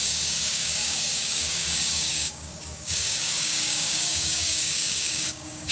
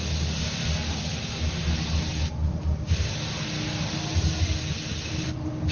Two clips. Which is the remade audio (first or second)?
first